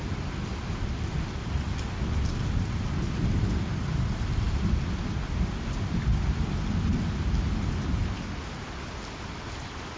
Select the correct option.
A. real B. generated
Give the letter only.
A